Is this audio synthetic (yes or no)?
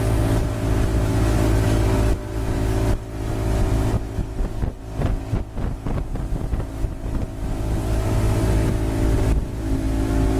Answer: no